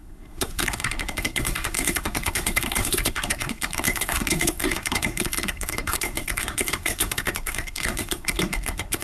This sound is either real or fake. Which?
fake